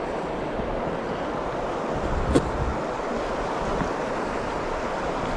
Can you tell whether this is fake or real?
real